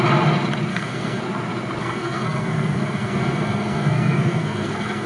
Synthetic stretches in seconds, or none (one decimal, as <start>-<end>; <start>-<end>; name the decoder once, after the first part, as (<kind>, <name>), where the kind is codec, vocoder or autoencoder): 0.7-1.2 (codec, SNAC); 1.8-5.1